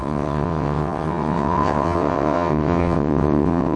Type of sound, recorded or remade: remade